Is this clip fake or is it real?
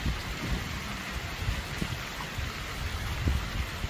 real